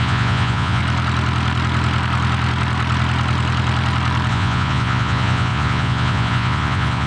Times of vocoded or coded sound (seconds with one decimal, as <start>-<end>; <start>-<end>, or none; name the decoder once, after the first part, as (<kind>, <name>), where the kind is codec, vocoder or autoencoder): 0.0-0.8 (vocoder, Vocos); 4.3-7.1